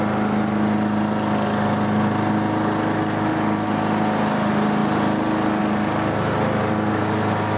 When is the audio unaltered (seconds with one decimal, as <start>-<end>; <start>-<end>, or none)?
0.0-7.6